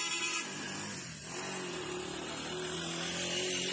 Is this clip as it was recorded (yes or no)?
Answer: yes